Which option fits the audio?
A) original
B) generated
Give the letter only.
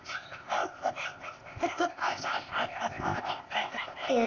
B